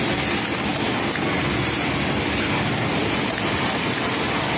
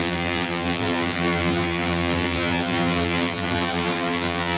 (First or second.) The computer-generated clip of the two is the second